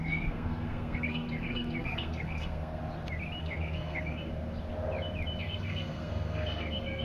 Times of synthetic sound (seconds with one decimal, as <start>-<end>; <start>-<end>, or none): 0.0-2.8; 3.4-4.3; 5.4-7.0